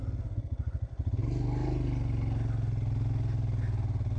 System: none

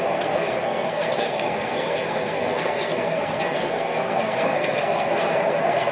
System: codec, SNAC